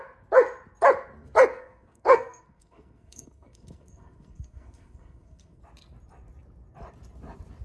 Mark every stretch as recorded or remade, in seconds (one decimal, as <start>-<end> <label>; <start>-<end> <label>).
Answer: 0.0-1.5 recorded; 1.5-5.6 remade; 5.6-7.6 recorded